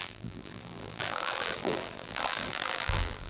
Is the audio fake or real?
fake